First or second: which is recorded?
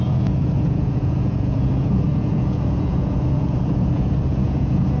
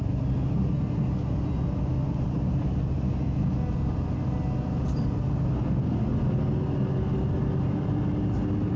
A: second